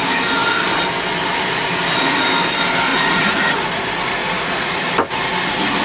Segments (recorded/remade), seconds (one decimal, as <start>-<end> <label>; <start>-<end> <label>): 0.0-2.9 recorded; 2.9-3.8 remade; 3.8-4.2 recorded; 4.2-4.9 remade; 4.9-5.8 recorded